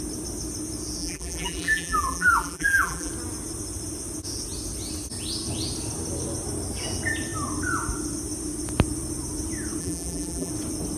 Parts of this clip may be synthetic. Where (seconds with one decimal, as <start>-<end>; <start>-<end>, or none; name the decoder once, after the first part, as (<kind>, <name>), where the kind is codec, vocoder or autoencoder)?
1.0-3.1 (vocoder, BigVGAN v2); 9.8-10.5